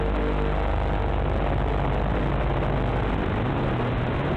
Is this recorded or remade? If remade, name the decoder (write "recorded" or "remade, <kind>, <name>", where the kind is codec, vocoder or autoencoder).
recorded